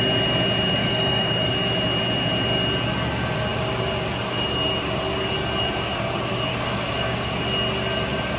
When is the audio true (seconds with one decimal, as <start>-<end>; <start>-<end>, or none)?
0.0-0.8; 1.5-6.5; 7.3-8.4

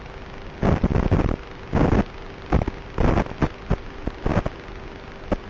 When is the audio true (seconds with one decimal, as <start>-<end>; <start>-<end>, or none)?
0.0-5.5

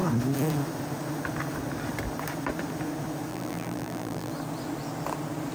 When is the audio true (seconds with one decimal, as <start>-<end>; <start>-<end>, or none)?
0.0-3.3; 4.3-5.5

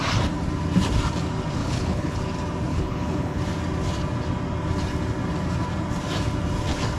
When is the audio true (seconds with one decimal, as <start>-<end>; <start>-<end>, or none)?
0.0-1.6; 2.2-2.7; 3.4-7.0